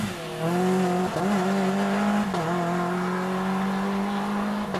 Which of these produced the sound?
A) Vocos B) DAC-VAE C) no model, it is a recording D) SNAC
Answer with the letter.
C